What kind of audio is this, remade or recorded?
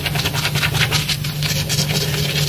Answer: recorded